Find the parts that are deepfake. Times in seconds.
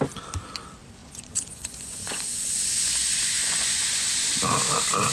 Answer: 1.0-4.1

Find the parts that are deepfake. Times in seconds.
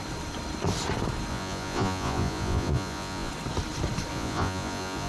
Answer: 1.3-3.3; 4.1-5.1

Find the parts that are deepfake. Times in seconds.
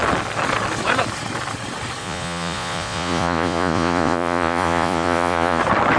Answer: 2.0-5.6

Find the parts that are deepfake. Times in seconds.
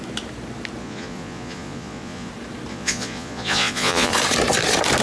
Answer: 0.8-2.3; 2.7-4.1